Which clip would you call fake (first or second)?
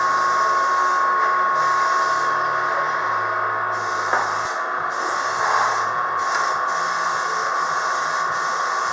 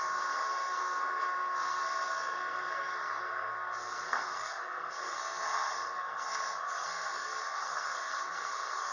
second